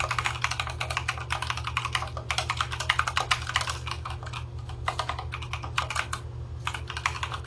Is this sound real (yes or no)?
yes